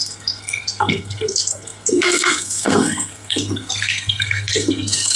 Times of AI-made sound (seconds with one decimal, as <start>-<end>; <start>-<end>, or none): 0.0-5.2